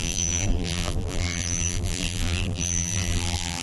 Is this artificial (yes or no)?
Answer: yes